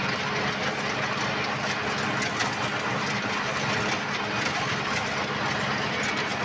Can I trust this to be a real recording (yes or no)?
yes